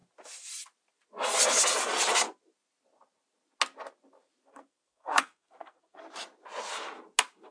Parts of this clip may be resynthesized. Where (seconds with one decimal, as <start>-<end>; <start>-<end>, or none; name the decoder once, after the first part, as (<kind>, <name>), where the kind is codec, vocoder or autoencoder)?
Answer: 4.5-6.0 (codec, SNAC)